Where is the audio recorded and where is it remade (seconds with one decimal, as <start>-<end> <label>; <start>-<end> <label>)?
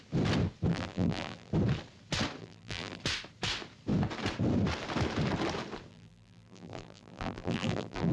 0.0-0.7 recorded; 0.7-1.5 remade; 1.5-2.4 recorded; 2.4-3.0 remade; 3.0-5.9 recorded; 5.9-8.1 remade